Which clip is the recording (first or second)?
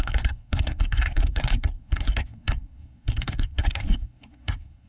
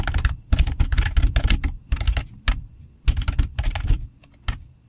second